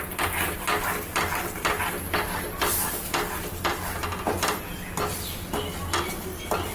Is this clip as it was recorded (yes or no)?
yes